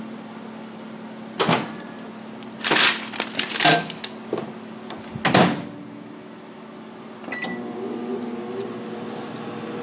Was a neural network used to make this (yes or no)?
no